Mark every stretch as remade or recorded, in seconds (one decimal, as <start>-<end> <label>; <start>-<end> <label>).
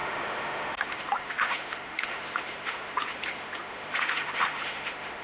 0.0-5.2 remade